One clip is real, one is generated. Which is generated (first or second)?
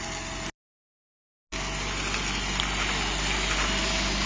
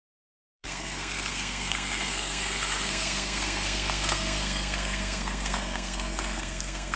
second